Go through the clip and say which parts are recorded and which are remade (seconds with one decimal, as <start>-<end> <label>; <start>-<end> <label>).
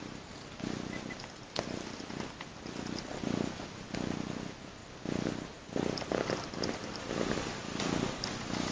0.0-8.7 recorded